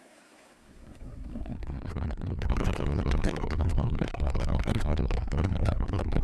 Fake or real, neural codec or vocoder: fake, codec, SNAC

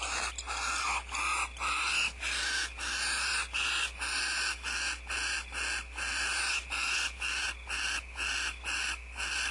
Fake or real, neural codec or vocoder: real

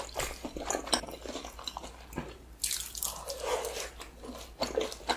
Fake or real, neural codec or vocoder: real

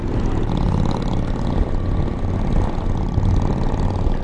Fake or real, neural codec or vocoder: real